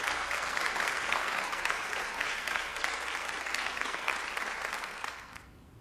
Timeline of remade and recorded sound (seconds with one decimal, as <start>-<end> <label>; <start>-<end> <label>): 0.0-4.1 remade; 4.1-4.7 recorded; 4.7-5.8 remade